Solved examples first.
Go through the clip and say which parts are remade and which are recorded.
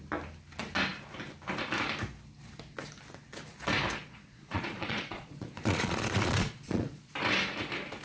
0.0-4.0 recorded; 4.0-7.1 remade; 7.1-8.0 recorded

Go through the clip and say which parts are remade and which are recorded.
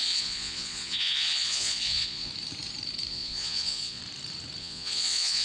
0.0-2.3 remade; 2.3-3.1 recorded; 3.1-4.0 remade; 4.0-4.6 recorded; 4.6-5.4 remade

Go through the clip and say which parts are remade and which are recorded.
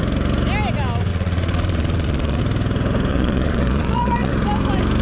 0.0-1.1 recorded; 1.1-2.4 remade; 2.4-3.1 recorded; 3.1-4.3 remade; 4.3-5.0 recorded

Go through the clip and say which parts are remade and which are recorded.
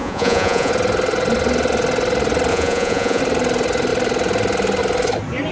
0.0-0.7 remade; 0.7-2.5 recorded; 2.5-3.2 remade; 3.2-5.5 recorded